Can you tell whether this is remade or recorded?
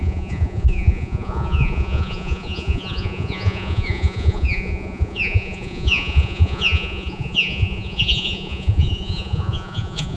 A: remade